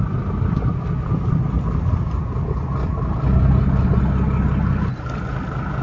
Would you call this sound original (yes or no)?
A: yes